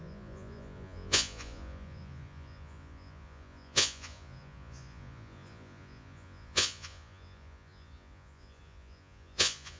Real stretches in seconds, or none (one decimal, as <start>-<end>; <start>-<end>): none